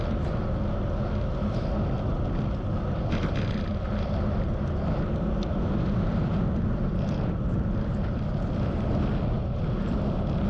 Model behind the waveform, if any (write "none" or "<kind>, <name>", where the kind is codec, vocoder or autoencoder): none